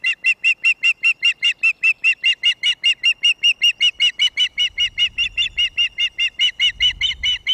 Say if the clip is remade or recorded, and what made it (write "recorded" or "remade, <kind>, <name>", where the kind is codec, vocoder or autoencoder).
recorded